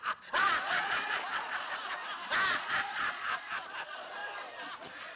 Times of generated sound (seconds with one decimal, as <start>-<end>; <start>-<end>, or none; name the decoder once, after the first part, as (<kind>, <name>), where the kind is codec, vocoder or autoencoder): 0.0-2.0 (vocoder, Vocos); 2.5-4.2; 4.8-5.2